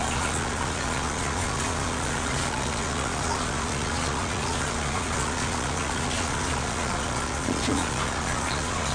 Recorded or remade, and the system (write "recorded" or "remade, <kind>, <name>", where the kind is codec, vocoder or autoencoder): remade, vocoder, Vocos